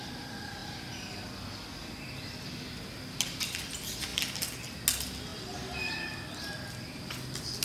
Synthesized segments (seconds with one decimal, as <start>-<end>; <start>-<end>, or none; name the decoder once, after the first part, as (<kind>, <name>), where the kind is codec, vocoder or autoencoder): none

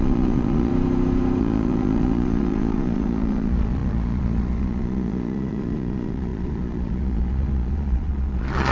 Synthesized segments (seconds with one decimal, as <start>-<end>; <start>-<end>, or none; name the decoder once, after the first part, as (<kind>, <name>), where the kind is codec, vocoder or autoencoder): 0.0-0.7 (vocoder, Vocos); 1.4-8.7

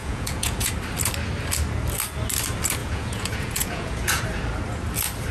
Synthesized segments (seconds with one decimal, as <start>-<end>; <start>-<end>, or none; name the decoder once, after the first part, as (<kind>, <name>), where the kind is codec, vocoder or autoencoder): 0.0-0.7 (vocoder, Vocos); 2.8-4.2

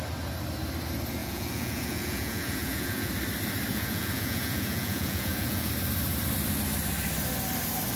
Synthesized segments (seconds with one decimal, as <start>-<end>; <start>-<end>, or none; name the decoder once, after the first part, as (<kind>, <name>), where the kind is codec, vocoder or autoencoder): 1.2-3.1 (vocoder, Vocos); 3.7-5.7

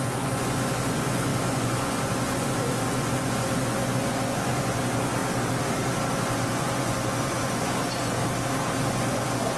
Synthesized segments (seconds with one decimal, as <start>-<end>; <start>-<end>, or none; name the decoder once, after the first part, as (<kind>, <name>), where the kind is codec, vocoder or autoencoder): 0.0-5.2 (vocoder, Vocos); 6.1-8.2; 8.9-9.6